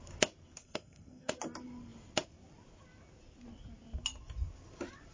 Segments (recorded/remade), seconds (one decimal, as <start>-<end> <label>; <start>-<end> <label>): 0.0-0.6 recorded; 0.6-1.3 remade; 1.3-5.1 recorded